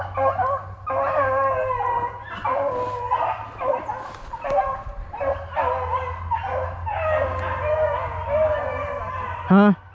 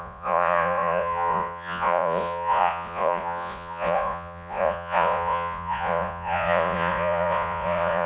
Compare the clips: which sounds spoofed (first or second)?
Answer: second